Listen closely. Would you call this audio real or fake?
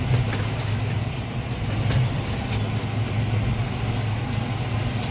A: real